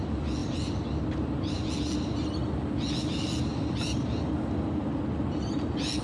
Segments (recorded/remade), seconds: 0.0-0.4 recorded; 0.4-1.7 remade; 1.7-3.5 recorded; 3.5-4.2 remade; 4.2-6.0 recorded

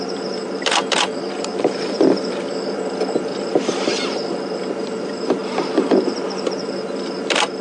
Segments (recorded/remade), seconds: 0.0-5.4 remade; 5.4-5.9 recorded; 5.9-7.6 remade

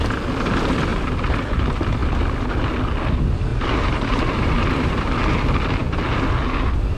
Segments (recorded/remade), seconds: 0.0-0.9 recorded; 0.9-1.6 remade; 1.6-3.5 recorded; 3.5-5.2 remade; 5.2-7.0 recorded

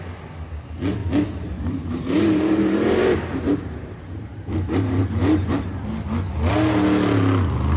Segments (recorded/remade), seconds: 0.0-1.0 recorded; 1.0-5.7 remade; 5.7-7.8 recorded

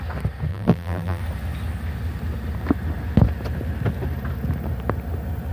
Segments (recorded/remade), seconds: 0.0-0.5 recorded; 0.5-1.2 remade; 1.2-5.5 recorded

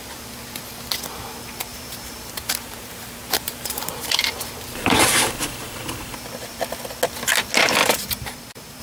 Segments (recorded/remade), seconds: 0.0-1.7 recorded; 1.7-6.6 remade; 6.6-7.8 recorded; 7.8-8.8 remade

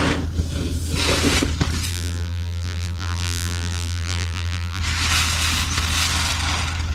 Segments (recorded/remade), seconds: 0.0-1.9 recorded; 1.9-4.8 remade; 4.8-6.9 recorded

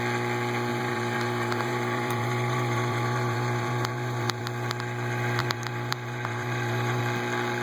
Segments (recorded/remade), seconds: 0.0-0.7 recorded; 0.7-4.4 remade; 4.4-5.4 recorded; 5.4-7.0 remade; 7.0-7.6 recorded